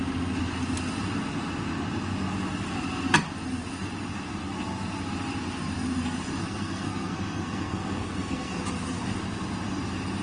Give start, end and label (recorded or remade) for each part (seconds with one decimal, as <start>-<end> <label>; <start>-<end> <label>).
0.0-6.4 recorded; 6.4-8.6 remade; 8.6-10.2 recorded